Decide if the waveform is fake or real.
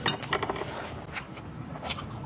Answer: real